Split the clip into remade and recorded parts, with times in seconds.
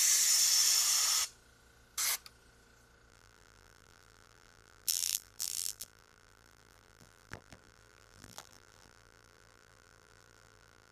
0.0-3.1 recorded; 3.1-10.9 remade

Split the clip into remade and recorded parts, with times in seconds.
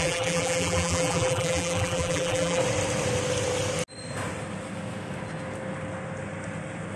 0.0-2.6 remade; 2.6-7.0 recorded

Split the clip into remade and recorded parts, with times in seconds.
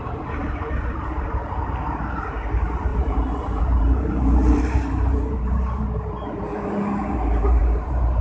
0.0-8.2 remade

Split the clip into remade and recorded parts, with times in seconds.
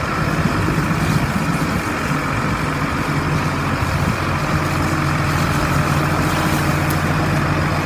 0.0-7.9 recorded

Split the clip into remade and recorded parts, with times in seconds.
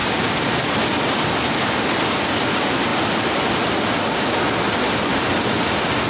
0.0-1.2 remade; 1.2-6.1 recorded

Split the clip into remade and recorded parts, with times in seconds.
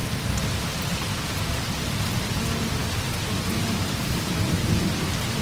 0.0-5.4 recorded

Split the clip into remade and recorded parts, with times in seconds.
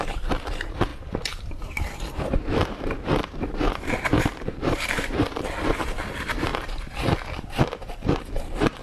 0.0-0.9 remade; 0.9-1.4 recorded; 1.4-8.8 remade